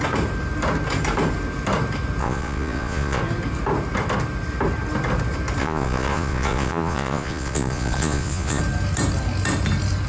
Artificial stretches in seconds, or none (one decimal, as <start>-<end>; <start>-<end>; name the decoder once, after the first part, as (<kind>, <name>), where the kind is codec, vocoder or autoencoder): 2.2-3.2 (vocoder, Vocos); 5.6-8.6